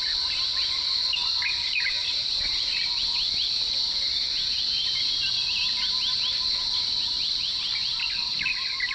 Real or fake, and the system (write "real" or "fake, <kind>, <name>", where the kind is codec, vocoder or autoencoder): real